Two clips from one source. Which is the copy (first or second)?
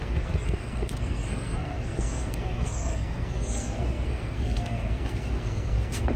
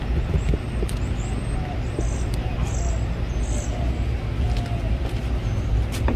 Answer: first